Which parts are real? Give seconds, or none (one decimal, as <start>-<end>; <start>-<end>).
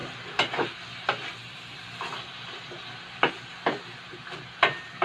0.0-5.0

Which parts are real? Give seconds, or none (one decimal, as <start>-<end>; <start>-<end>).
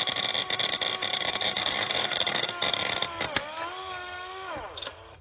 0.0-1.1; 2.5-3.8; 4.6-5.2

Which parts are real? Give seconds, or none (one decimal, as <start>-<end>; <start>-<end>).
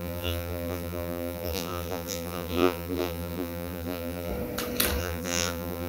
4.3-5.0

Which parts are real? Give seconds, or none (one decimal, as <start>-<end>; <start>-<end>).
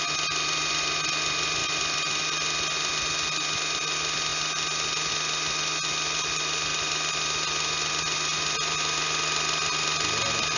0.0-10.6